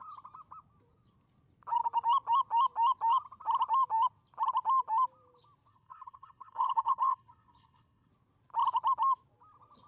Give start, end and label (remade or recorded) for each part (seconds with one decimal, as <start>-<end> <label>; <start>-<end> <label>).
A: 0.0-5.7 recorded; 5.7-8.1 remade; 8.1-9.9 recorded